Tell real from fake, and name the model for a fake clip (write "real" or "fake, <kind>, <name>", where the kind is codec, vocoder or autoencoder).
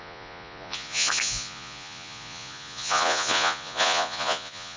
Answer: fake, vocoder, Vocos